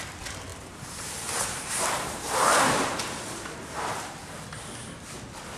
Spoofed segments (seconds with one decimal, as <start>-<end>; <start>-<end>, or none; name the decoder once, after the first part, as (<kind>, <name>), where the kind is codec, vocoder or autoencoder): 0.5-3.9 (vocoder, BigVGAN v2)